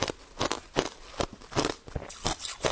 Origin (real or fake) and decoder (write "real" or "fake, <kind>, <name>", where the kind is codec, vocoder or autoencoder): real